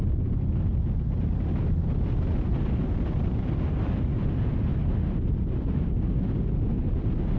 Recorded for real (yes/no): yes